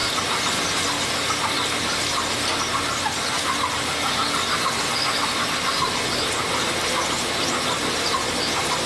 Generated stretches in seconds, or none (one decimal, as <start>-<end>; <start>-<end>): none